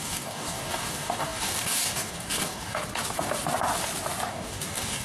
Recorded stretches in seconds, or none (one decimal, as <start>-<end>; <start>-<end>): 2.8-4.3